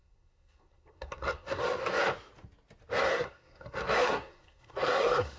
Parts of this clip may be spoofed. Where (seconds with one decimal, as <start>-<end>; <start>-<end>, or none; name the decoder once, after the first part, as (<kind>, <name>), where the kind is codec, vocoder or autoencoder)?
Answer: 0.0-1.6 (codec, SNAC); 3.1-5.4